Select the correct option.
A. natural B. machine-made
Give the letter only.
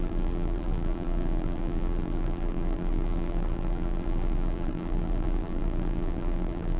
B